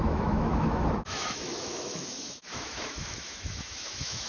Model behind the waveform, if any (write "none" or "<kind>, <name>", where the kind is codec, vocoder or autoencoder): autoencoder, DAC-VAE